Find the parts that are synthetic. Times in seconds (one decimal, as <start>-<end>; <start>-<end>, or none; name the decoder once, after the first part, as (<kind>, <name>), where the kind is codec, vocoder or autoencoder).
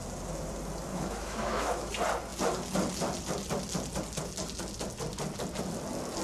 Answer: 0.9-1.9 (autoencoder, DAC-VAE)